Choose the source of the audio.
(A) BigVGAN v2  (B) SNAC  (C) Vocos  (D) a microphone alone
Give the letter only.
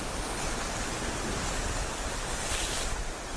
A